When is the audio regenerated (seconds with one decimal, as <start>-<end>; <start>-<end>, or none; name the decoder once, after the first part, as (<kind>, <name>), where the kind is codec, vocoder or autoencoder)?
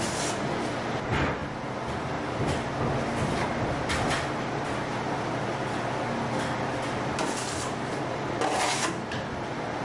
none